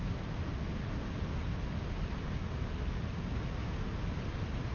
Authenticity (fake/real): real